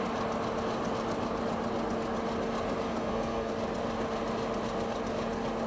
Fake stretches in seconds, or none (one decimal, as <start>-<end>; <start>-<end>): 2.9-3.5